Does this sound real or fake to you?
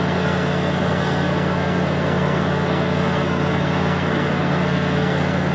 fake